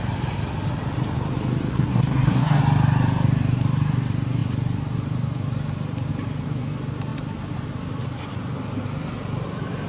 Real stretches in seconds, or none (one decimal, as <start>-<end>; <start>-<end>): 0.0-1.7; 2.6-9.9